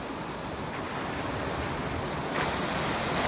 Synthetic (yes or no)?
no